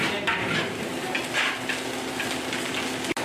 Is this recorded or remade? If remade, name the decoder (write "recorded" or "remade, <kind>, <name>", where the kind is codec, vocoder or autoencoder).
recorded